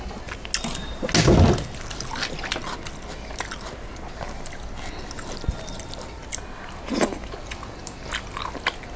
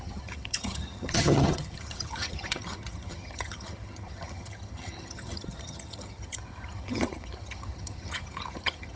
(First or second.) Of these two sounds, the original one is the first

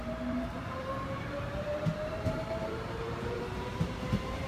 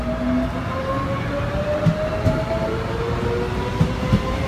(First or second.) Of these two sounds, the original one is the second